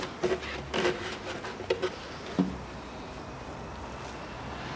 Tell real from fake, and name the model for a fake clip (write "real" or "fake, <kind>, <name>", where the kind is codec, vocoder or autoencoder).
real